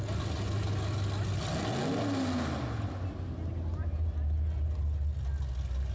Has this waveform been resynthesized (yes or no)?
no